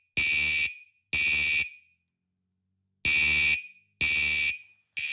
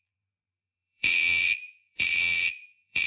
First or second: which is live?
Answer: first